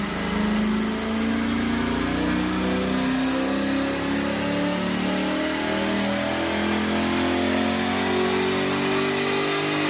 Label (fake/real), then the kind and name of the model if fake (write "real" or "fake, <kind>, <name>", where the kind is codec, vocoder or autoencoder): real